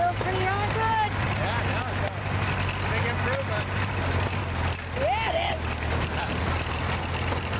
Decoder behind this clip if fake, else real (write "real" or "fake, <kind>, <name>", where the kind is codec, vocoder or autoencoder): real